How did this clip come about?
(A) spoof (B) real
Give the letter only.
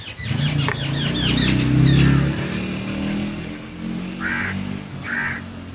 B